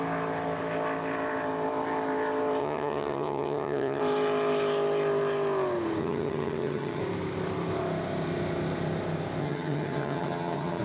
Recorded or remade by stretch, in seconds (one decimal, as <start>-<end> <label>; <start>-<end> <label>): 0.0-2.6 recorded; 2.6-4.0 remade; 4.0-6.0 recorded; 6.0-7.0 remade; 7.0-9.4 recorded; 9.4-10.8 remade